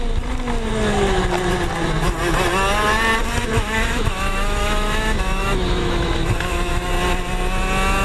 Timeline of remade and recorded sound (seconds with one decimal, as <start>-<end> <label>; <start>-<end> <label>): 0.0-3.4 recorded; 3.4-6.9 remade; 6.9-8.0 recorded